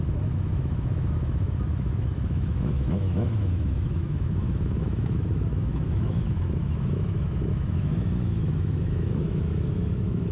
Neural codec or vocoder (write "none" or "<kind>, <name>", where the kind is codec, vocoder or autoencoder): autoencoder, DAC-VAE